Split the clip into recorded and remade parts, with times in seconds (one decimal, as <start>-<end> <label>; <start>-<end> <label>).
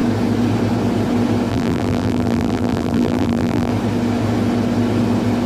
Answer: 0.0-1.5 recorded; 1.5-3.7 remade; 3.7-5.5 recorded